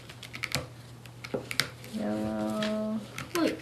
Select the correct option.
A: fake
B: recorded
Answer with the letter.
B